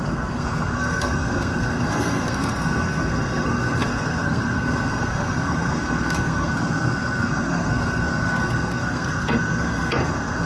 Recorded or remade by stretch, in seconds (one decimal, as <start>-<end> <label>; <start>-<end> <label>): 0.0-10.5 remade

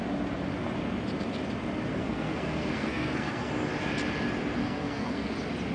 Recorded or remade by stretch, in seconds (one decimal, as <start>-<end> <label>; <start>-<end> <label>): 0.0-1.9 recorded; 1.9-3.5 remade; 3.5-4.6 recorded; 4.6-5.3 remade; 5.3-5.7 recorded

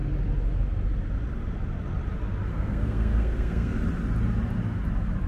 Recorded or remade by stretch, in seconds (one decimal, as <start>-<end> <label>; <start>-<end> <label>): 0.0-2.5 recorded; 2.5-3.8 remade; 3.8-5.3 recorded